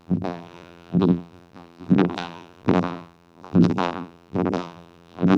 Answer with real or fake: fake